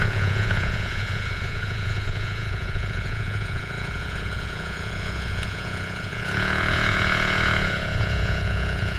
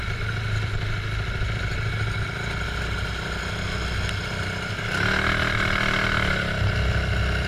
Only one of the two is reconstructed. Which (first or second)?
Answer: first